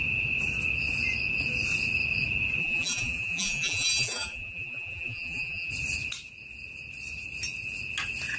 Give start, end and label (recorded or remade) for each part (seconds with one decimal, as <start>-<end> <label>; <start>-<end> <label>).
0.0-2.6 recorded; 2.6-5.7 remade; 5.7-8.4 recorded